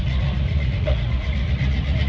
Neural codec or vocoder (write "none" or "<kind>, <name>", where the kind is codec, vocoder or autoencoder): vocoder, Vocos